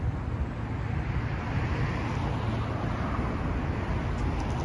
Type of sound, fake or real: real